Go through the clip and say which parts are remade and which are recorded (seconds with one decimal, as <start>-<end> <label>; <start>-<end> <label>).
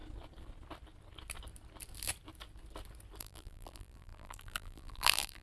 0.0-3.2 recorded; 3.2-5.4 remade